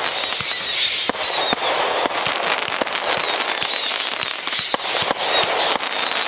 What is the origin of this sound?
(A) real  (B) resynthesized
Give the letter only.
A